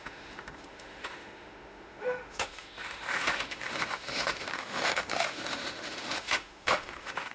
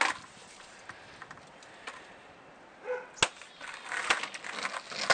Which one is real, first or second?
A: second